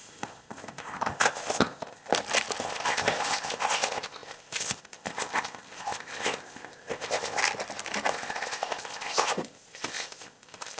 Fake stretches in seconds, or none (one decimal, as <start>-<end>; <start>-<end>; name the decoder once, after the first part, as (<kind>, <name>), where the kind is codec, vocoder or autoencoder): 0.0-2.1 (codec, ZipCodec); 2.6-7.4; 8.1-10.8